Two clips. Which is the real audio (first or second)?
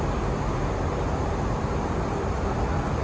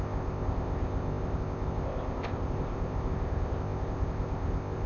first